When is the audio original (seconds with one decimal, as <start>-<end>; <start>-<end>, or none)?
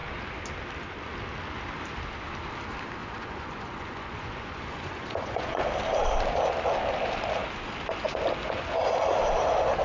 0.0-3.0; 5.6-9.8